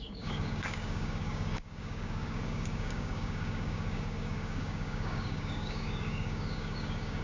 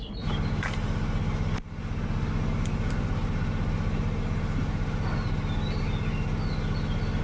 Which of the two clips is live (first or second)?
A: second